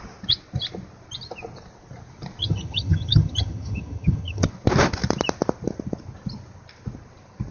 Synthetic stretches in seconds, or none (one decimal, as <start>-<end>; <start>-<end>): 2.4-4.5